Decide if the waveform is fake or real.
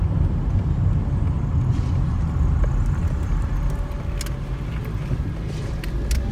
real